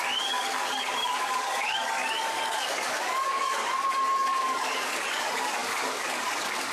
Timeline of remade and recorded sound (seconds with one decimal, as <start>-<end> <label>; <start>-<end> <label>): 0.0-6.7 remade